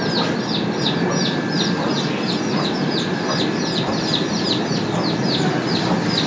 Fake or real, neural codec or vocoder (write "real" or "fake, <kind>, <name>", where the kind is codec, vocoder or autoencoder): real